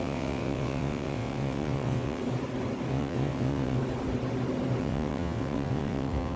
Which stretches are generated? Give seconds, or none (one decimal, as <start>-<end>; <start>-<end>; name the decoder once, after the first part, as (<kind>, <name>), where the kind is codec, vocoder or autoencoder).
0.0-2.2 (vocoder, WaveNeXt); 2.9-3.8; 4.8-6.4